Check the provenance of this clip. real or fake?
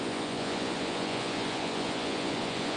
fake